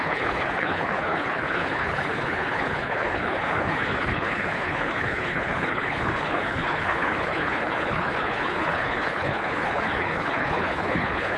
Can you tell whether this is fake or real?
fake